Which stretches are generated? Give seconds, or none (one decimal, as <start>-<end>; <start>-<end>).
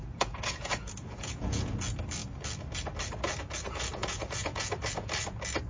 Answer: 0.0-1.7; 3.9-4.7